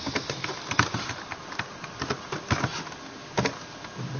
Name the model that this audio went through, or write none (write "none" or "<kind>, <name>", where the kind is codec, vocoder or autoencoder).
none